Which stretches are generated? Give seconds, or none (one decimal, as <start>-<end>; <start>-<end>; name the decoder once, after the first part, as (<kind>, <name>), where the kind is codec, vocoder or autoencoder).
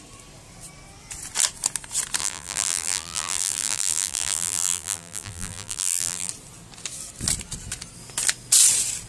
2.2-6.3 (vocoder, BigVGAN v2)